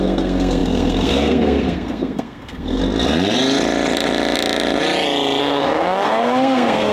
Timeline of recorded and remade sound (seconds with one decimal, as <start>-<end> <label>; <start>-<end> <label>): 0.0-2.8 remade; 2.8-5.4 recorded; 5.4-6.9 remade